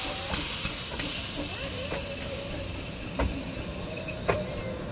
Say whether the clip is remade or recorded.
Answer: recorded